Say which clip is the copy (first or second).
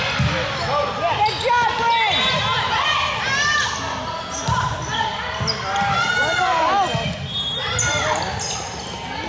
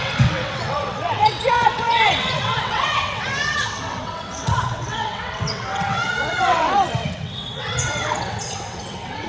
second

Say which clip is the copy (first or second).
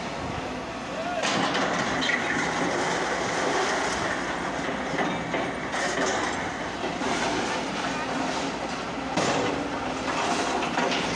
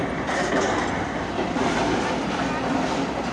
second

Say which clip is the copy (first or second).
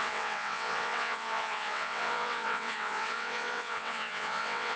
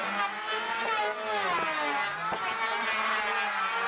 first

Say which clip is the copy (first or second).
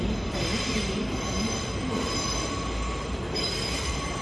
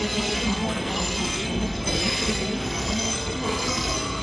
second